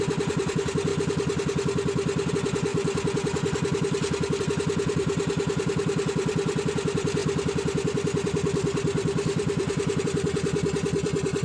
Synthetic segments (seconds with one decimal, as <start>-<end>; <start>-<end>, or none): 0.0-0.9; 2.3-2.7; 4.4-11.4